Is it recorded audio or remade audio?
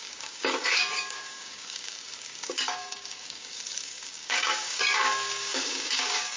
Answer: remade